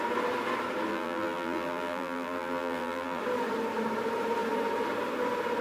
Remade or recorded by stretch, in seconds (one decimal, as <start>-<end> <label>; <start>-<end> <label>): 0.0-0.9 recorded; 0.9-3.2 remade; 3.2-5.6 recorded